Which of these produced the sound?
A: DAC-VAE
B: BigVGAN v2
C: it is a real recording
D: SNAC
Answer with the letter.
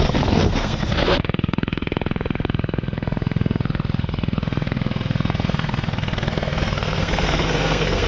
D